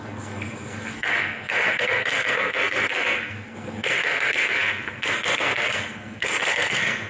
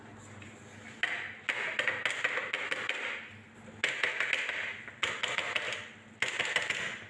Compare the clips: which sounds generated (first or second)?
first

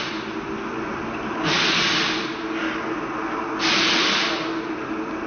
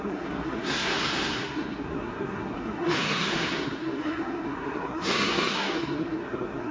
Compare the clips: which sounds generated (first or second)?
second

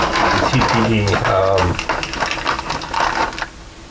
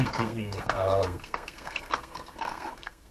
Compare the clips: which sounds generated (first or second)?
second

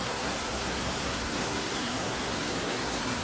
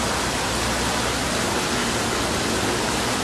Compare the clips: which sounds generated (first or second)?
first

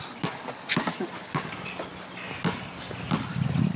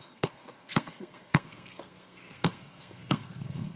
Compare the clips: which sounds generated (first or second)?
second